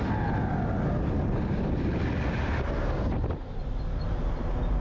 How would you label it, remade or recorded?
recorded